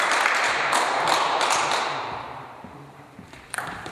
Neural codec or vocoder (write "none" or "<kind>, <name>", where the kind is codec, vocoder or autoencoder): vocoder, BigVGAN v2